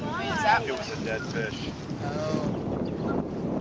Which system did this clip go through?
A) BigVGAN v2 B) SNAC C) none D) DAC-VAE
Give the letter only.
C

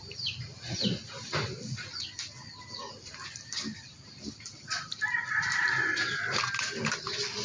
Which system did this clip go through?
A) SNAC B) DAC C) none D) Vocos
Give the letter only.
C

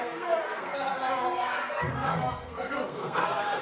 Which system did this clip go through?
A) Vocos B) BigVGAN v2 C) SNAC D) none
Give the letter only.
C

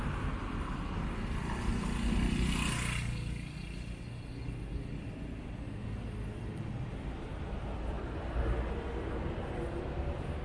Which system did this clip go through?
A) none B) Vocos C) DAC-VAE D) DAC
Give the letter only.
A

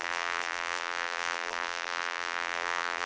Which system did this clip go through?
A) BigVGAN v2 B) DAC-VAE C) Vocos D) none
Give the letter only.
A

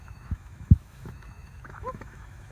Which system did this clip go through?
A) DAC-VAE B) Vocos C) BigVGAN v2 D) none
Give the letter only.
A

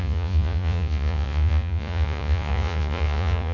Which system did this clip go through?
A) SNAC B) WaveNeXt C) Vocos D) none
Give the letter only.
C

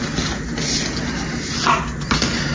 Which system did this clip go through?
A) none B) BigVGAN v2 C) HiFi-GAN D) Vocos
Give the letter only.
A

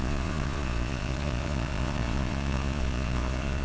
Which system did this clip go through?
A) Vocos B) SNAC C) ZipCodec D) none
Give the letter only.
A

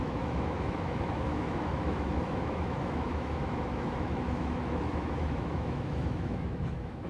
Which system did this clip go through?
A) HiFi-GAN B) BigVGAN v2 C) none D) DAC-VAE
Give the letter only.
D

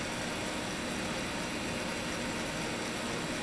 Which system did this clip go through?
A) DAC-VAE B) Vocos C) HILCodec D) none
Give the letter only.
D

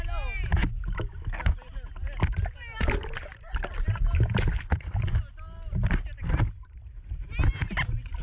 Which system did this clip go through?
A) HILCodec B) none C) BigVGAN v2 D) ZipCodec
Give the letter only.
B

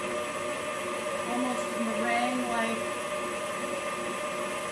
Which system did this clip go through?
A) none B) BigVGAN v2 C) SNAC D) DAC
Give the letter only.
A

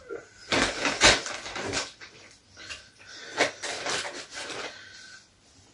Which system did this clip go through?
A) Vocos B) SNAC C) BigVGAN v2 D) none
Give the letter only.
D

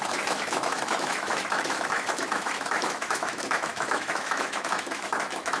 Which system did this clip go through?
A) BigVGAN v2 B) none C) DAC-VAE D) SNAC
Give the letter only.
C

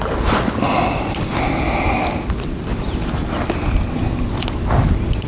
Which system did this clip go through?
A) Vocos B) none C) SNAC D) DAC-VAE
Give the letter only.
B